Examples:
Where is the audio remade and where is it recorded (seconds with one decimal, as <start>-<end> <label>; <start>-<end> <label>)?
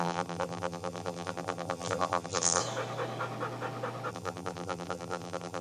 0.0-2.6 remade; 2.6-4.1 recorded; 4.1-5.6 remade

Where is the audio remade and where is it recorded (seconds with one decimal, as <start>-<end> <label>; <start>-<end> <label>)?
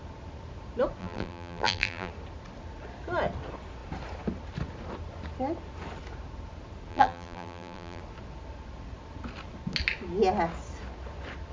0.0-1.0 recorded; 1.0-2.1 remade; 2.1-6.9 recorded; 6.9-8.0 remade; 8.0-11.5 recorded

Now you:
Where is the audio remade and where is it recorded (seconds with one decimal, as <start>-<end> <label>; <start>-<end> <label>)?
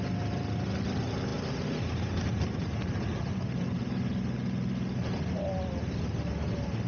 0.0-6.9 recorded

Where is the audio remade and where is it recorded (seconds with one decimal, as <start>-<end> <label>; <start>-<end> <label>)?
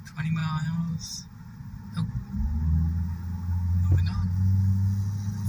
0.0-5.5 recorded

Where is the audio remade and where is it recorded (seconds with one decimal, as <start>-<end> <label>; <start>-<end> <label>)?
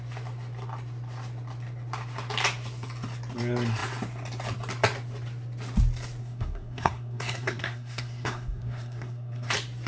0.0-6.2 recorded; 6.2-9.5 remade; 9.5-9.9 recorded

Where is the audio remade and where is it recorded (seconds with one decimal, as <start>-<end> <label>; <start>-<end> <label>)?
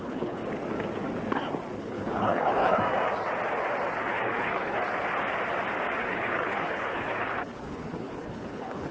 0.0-0.4 remade; 0.4-1.8 recorded; 1.8-2.8 remade; 2.8-4.0 recorded; 4.0-4.8 remade; 4.8-6.0 recorded; 6.0-8.9 remade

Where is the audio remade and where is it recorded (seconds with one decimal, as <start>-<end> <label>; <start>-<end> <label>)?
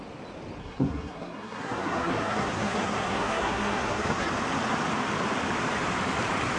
0.0-0.6 recorded; 0.6-4.3 remade; 4.3-6.6 recorded